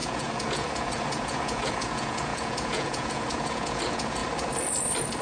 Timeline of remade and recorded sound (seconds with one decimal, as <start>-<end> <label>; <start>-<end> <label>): 0.0-4.2 remade; 4.2-5.2 recorded

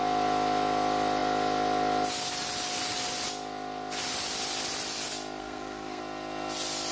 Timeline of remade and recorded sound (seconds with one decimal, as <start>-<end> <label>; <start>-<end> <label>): 0.0-5.4 recorded; 5.4-6.0 remade; 6.0-6.9 recorded

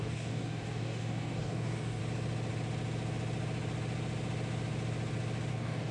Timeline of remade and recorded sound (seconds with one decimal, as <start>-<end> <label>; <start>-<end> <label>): 0.0-2.0 remade; 2.0-5.5 recorded; 5.5-5.9 remade

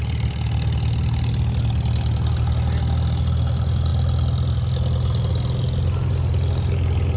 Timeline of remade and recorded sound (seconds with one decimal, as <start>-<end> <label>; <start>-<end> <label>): 0.0-7.2 recorded

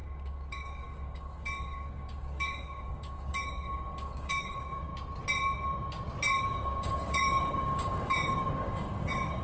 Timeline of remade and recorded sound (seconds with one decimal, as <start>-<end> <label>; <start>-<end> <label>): 0.0-4.9 remade; 4.9-6.4 recorded; 6.4-9.4 remade